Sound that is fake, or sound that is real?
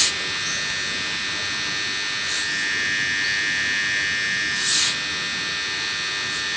real